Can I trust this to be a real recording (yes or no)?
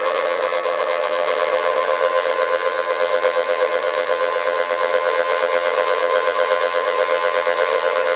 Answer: no